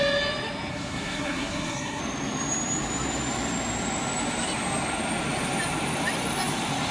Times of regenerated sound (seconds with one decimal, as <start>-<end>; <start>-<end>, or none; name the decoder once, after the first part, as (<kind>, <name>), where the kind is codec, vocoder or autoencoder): 0.7-2.0 (codec, SNAC)